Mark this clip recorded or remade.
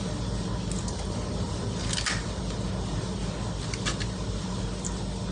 recorded